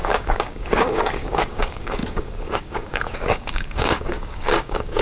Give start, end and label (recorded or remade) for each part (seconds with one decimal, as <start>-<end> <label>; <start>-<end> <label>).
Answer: 0.0-5.0 remade